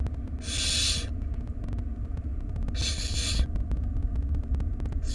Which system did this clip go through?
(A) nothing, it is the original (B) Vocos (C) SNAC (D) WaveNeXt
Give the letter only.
A